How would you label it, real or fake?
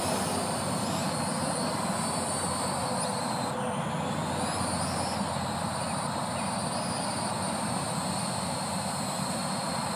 real